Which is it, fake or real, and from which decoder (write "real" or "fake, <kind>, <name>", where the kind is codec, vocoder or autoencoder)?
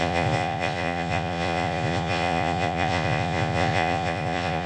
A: fake, vocoder, Vocos